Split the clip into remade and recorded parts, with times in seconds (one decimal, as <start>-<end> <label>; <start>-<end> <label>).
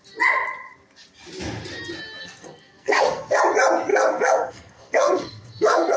0.0-2.2 recorded; 2.2-3.4 remade; 3.4-3.9 recorded; 3.9-6.0 remade